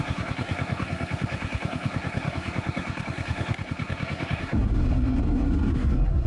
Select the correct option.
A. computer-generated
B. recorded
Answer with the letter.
A